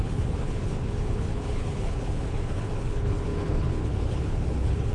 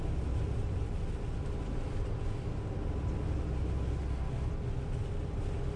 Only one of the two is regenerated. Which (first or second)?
first